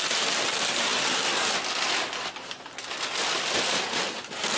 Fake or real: real